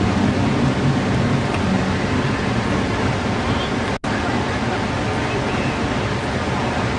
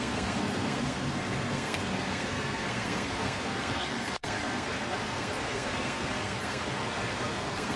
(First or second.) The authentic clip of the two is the first